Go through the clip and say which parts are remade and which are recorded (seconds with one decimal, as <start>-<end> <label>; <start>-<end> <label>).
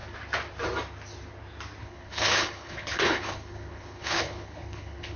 0.0-1.8 recorded; 1.8-5.2 remade